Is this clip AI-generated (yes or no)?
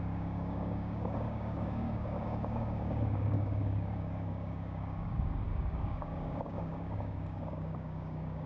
yes